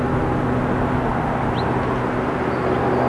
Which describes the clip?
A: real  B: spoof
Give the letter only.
A